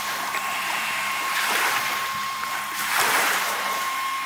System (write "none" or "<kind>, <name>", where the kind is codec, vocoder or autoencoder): vocoder, BigVGAN v2